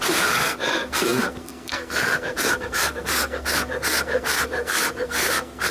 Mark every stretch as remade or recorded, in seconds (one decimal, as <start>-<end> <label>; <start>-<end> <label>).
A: 0.0-5.7 remade